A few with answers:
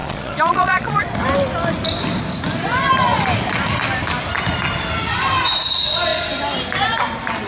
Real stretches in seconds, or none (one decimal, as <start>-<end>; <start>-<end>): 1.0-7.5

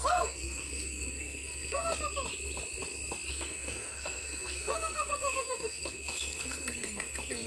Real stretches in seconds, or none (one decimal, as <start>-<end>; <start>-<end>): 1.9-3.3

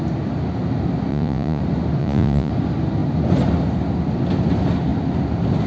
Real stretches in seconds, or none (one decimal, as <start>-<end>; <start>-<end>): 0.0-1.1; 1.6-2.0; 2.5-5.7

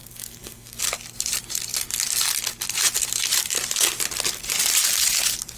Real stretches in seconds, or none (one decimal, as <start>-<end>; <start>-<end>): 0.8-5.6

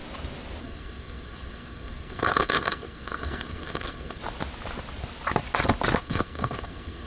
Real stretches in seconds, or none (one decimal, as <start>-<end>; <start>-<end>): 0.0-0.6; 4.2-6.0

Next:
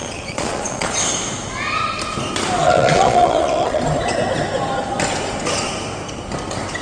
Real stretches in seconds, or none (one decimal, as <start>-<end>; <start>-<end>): 1.0-2.6; 3.8-6.8

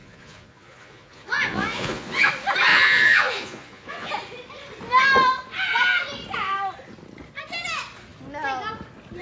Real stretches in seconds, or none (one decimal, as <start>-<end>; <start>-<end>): 2.3-2.7; 4.1-9.2

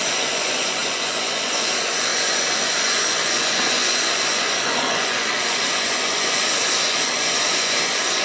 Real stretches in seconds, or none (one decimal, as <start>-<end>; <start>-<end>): none